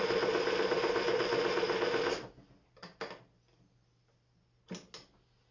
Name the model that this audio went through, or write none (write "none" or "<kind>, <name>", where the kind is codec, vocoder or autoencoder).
none